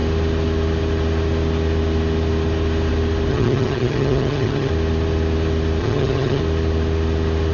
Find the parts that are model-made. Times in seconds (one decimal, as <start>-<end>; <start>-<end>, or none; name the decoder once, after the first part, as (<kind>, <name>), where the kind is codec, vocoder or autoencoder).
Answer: 3.3-4.7 (vocoder, HiFi-GAN); 5.8-6.4